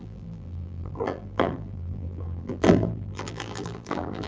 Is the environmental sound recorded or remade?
remade